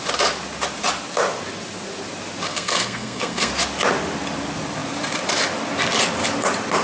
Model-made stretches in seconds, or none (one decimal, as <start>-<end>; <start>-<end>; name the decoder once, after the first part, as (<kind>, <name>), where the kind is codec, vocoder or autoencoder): 2.5-3.5 (codec, SNAC)